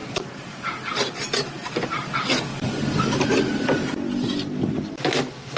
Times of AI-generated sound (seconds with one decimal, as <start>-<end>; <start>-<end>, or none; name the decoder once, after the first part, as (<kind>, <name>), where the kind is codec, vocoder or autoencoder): none

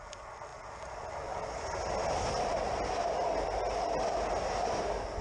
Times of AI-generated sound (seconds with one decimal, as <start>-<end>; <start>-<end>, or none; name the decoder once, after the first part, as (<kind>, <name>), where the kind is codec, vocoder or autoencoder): none

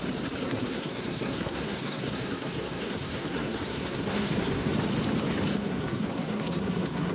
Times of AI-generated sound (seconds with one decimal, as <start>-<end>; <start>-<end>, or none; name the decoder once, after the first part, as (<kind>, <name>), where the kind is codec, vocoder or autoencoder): 0.4-4.7 (codec, SNAC); 5.5-7.1

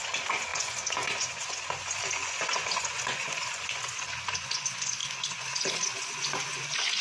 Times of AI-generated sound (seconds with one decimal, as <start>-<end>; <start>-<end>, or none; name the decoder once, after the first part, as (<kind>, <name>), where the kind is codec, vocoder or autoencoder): 0.0-7.0 (vocoder, Vocos)

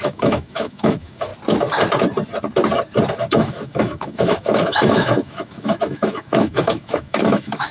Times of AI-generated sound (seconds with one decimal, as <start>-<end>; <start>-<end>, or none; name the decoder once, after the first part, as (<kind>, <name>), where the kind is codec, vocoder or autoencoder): 0.0-1.3 (autoencoder, DAC-VAE); 3.3-7.7

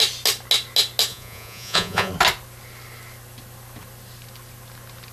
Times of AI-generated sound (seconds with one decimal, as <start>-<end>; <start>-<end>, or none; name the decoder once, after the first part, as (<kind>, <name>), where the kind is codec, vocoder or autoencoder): 1.1-2.1 (vocoder, Vocos)